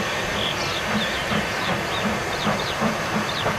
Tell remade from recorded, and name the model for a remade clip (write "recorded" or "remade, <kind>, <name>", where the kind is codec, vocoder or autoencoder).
remade, vocoder, BigVGAN v2